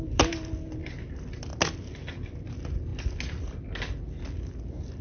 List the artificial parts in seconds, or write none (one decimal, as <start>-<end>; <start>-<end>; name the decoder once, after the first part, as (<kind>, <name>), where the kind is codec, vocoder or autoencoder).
none